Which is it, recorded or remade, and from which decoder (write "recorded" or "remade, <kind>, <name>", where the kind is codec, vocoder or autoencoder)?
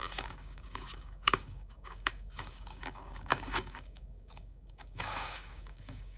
remade, codec, DAC